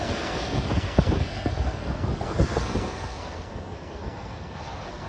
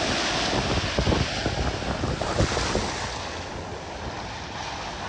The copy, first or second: first